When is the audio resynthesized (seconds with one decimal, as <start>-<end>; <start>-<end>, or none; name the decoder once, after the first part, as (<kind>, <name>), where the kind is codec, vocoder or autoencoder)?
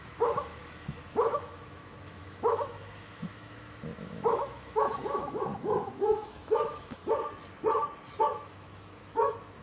0.0-7.0 (autoencoder, DAC-VAE); 8.2-9.6